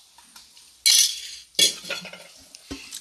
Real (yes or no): yes